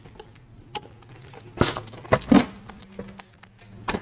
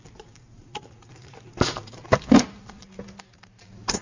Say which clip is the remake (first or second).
second